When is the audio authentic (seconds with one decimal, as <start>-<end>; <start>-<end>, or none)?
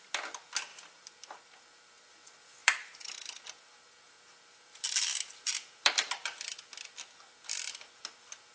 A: 0.0-0.7; 2.1-2.6; 7.7-8.5